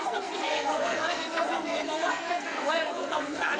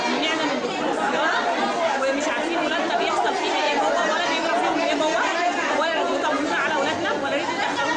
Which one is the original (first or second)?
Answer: second